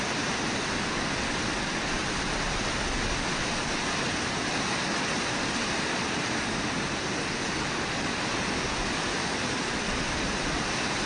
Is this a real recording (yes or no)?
yes